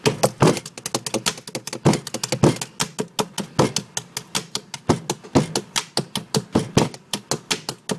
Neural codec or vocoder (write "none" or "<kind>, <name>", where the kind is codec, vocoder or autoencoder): none